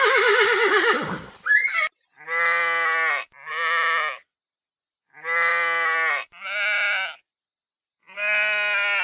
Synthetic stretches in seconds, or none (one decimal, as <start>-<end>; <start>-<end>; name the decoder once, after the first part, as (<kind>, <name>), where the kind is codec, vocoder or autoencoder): none